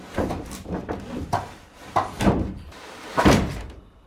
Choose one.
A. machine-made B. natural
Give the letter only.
A